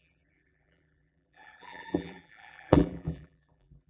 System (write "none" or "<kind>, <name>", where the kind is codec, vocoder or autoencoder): vocoder, BigVGAN v2